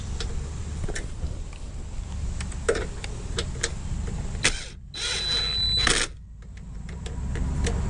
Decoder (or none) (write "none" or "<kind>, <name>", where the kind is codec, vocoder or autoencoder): none